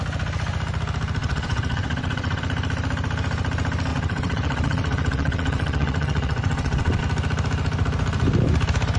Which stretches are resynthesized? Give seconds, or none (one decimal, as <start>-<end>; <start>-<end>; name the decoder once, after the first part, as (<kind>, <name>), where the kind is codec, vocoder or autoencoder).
1.2-2.4 (vocoder, WaveNeXt); 3.9-7.0